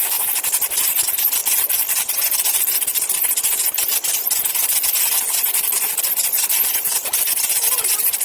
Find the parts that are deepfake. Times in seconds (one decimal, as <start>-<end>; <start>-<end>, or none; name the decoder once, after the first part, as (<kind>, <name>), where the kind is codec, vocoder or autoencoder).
none